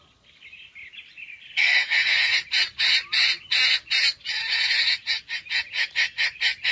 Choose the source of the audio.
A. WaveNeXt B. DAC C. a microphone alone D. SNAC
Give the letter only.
C